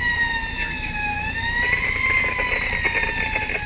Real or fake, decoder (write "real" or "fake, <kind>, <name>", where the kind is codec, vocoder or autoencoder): real